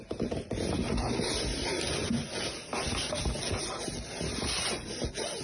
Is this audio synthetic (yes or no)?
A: no